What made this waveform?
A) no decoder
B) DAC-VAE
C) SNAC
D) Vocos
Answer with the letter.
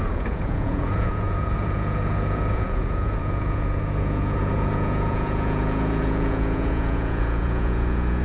D